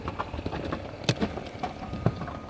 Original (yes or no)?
yes